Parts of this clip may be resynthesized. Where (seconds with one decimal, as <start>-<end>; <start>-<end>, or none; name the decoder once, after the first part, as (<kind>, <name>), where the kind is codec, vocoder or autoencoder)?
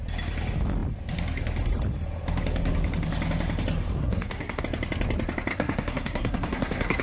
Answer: 4.0-4.6 (codec, SNAC); 5.5-7.0